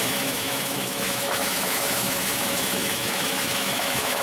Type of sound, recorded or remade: remade